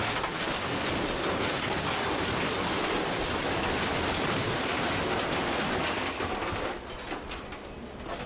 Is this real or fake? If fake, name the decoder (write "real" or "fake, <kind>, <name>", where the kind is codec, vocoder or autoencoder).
real